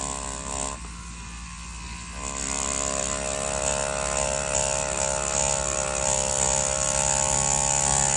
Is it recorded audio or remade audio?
recorded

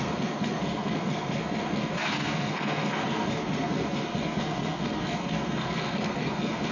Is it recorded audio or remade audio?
remade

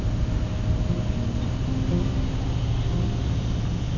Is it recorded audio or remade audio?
recorded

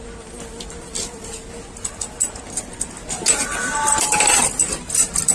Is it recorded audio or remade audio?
recorded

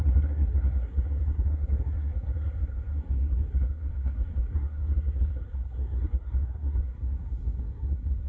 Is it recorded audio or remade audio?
remade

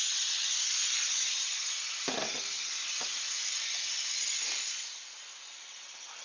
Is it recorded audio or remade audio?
recorded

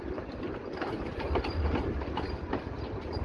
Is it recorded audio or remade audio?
recorded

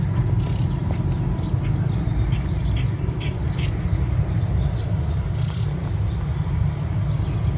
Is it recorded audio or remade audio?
recorded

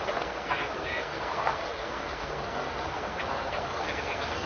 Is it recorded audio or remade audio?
remade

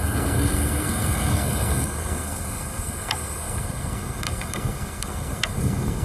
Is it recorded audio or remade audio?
remade